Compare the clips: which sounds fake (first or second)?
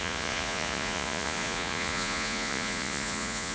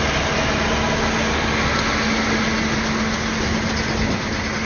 first